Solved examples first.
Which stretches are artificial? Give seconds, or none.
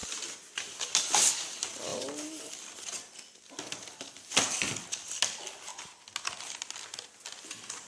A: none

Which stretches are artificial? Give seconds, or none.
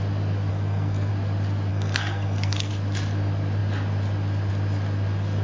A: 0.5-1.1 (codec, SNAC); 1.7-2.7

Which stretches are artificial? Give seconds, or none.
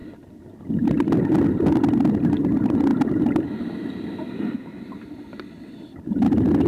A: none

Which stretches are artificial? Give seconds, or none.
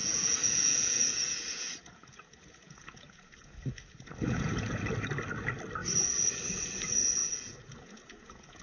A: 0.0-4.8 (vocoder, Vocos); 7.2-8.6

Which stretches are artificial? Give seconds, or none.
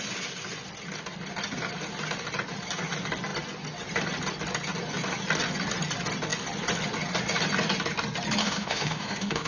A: 8.4-9.5 (autoencoder, DAC-VAE)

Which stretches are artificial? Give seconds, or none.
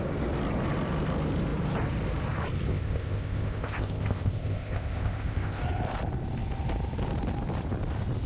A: 2.7-5.6 (codec, ZipCodec)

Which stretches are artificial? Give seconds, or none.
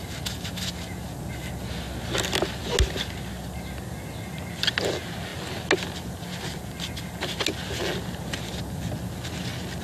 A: none